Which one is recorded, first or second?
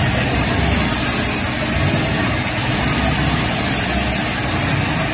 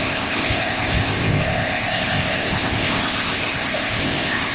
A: first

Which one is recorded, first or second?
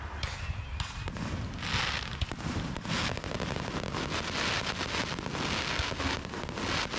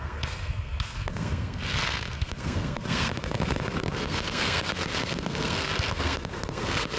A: first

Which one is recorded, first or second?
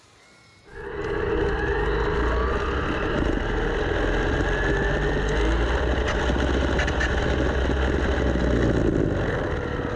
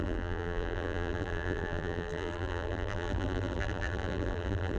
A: first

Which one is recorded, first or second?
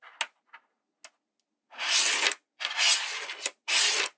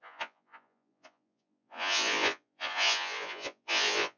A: first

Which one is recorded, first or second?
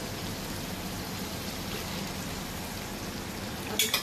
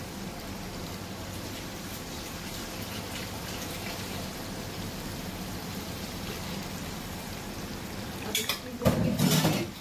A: first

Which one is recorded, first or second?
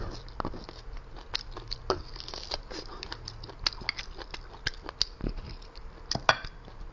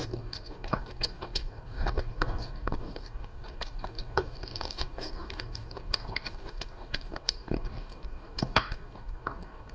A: first